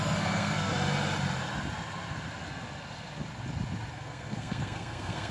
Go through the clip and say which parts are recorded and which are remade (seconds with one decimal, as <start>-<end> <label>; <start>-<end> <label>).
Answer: 0.0-0.7 remade; 0.7-3.9 recorded; 3.9-5.3 remade

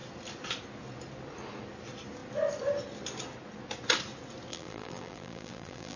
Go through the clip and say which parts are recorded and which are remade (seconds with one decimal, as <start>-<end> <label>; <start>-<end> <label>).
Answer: 0.0-4.5 recorded; 4.5-6.0 remade

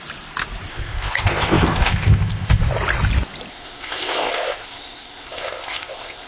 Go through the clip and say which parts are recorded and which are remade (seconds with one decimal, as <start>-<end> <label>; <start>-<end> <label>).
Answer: 0.0-0.7 recorded; 0.7-2.6 remade; 2.6-3.5 recorded; 3.5-6.3 remade

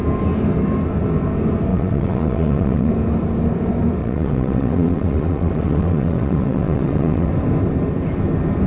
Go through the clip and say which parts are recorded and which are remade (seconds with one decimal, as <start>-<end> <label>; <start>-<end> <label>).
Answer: 0.0-1.7 recorded; 1.7-2.9 remade; 2.9-4.0 recorded; 4.0-7.3 remade; 7.3-8.7 recorded